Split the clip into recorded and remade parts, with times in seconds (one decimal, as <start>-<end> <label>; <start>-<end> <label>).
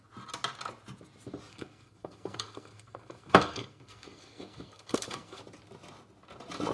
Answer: 0.0-1.5 recorded; 1.5-5.4 remade; 5.4-6.7 recorded